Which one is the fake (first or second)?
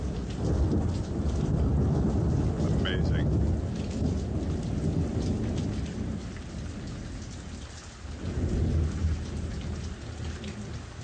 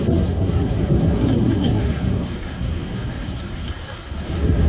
second